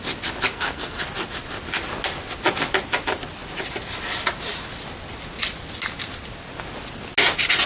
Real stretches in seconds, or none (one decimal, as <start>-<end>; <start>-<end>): 0.0-0.5; 1.0-7.7